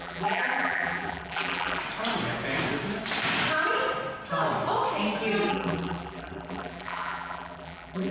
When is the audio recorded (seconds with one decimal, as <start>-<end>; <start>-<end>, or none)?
1.8-5.5